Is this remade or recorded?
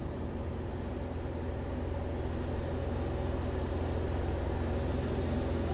recorded